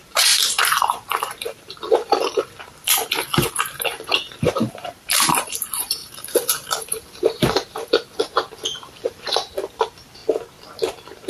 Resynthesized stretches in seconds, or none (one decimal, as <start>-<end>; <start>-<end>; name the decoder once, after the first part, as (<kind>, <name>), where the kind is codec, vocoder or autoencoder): 0.0-10.2 (vocoder, BigVGAN v2)